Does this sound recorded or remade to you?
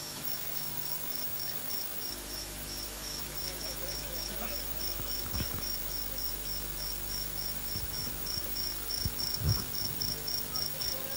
remade